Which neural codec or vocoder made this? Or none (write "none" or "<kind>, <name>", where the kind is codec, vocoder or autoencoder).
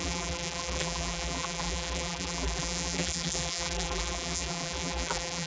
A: vocoder, BigVGAN v2